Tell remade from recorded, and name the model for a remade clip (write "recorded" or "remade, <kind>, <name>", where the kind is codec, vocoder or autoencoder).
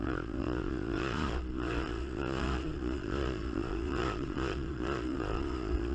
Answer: remade, vocoder, Vocos